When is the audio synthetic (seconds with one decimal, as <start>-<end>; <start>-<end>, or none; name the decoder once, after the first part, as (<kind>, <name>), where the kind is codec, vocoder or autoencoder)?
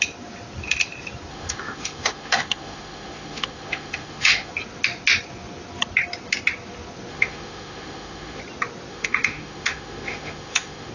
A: 1.3-4.5 (autoencoder, DAC-VAE); 7.1-8.4; 8.9-10.9